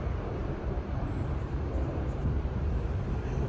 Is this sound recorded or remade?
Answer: remade